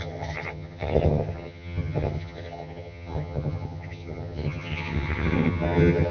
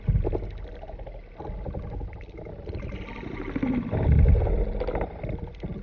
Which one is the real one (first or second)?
second